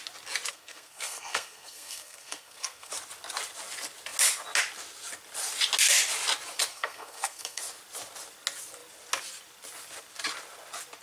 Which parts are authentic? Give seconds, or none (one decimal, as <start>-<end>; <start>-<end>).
0.0-0.5; 2.9-6.7; 7.6-11.0